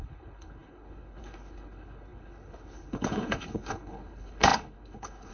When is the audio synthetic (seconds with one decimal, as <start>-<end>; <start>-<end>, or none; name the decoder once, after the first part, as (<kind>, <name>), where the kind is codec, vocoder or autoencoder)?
0.0-5.3 (codec, HILCodec)